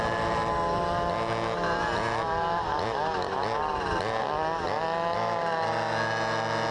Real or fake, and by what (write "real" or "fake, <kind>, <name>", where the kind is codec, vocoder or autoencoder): real